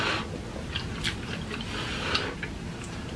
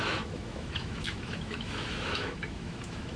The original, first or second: first